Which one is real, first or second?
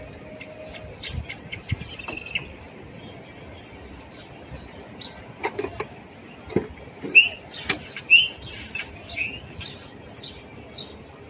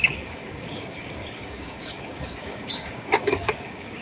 first